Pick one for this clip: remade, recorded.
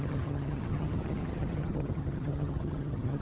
remade